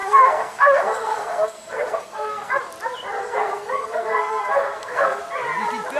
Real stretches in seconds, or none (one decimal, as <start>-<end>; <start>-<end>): 2.6-3.2; 5.2-6.0